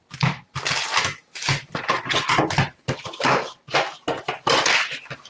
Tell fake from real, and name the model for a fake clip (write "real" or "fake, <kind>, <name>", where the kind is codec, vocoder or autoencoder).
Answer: real